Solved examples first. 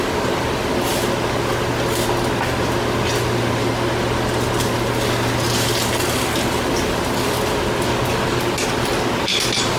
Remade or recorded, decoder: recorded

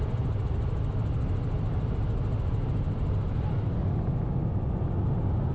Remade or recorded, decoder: recorded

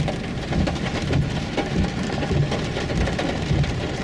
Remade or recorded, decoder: recorded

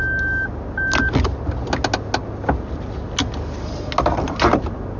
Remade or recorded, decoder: recorded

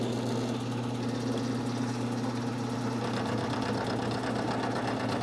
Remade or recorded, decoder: recorded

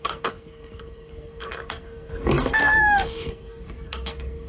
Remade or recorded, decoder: remade, codec, SNAC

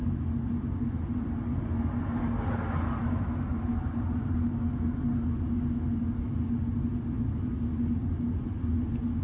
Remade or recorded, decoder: recorded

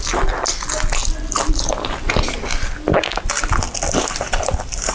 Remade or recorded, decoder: recorded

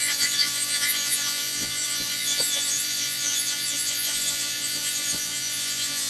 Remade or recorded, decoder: remade, vocoder, Vocos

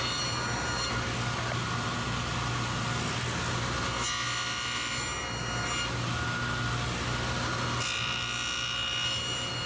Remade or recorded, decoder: recorded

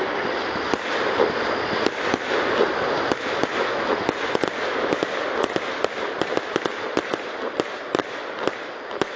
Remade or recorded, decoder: recorded